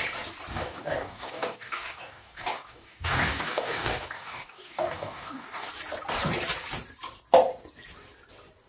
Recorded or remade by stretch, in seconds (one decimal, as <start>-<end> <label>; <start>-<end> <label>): 0.0-0.5 recorded; 0.5-5.7 remade; 5.7-8.7 recorded